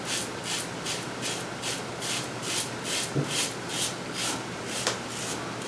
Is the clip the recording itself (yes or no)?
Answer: yes